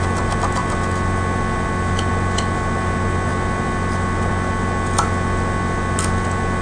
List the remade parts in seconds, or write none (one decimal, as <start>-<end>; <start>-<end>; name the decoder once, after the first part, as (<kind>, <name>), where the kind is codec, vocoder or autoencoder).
none

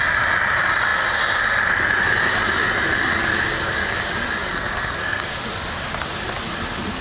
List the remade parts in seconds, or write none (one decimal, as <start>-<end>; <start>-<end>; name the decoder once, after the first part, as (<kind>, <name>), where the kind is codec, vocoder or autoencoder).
4.5-5.3 (codec, SNAC)

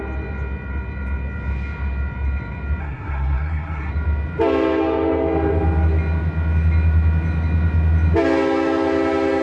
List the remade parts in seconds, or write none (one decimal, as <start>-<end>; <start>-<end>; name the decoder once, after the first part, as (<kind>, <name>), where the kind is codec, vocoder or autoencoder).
2.8-3.9 (codec, SNAC)

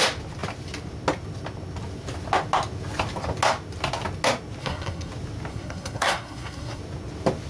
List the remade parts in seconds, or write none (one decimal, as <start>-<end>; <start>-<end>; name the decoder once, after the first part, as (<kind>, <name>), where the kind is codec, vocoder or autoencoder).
4.6-5.1 (codec, SNAC); 5.5-6.8

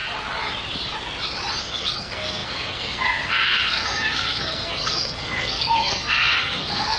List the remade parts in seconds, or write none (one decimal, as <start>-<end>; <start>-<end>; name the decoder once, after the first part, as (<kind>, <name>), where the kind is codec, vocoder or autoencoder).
1.6-7.0 (codec, SNAC)